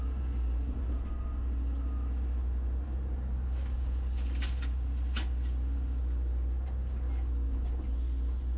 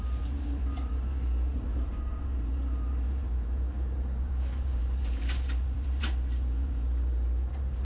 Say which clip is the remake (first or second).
second